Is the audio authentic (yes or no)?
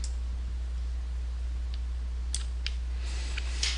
yes